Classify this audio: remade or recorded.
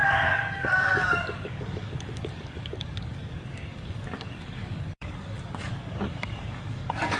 remade